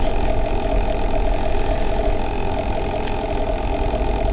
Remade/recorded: recorded